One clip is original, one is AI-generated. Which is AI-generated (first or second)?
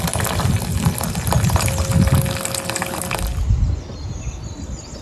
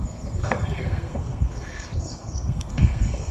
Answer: second